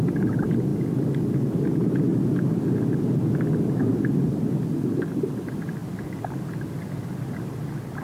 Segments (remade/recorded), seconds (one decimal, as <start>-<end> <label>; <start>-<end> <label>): 0.0-8.0 recorded